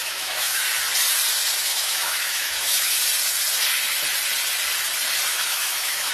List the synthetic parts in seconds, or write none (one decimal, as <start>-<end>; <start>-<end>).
0.0-0.6; 1.7-2.9; 5.3-6.1